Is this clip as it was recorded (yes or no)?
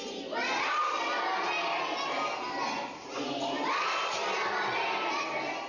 yes